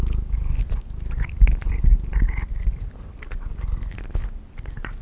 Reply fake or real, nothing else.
real